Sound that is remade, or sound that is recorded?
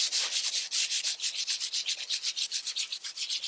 recorded